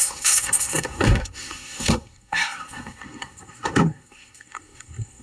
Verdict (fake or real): fake